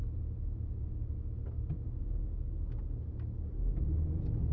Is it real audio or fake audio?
real